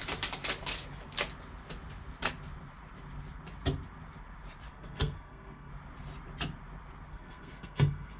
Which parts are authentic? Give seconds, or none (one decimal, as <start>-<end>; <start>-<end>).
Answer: 0.0-4.7; 5.7-7.1